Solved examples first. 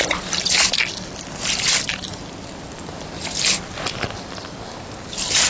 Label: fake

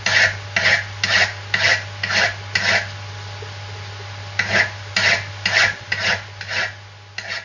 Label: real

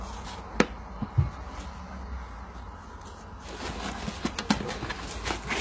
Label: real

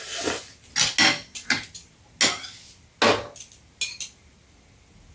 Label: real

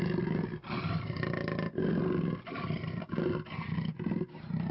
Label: real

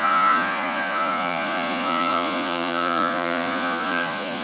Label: fake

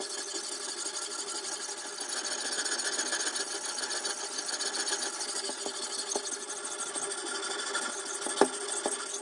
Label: real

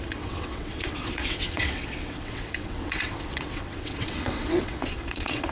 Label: fake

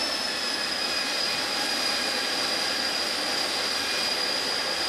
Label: real